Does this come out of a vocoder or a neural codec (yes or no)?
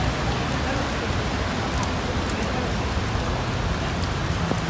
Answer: no